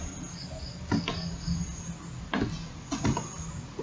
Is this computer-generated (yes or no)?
no